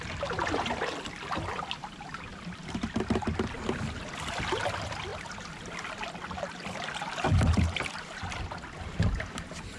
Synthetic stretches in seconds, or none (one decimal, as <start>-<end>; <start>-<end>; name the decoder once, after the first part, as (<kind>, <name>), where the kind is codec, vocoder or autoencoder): none